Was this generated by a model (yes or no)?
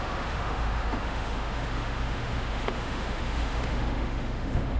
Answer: yes